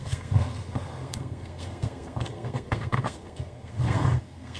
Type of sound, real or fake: fake